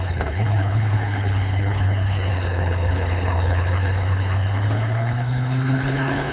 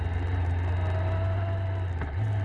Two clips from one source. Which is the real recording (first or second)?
second